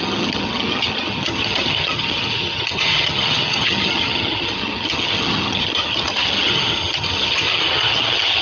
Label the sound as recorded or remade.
remade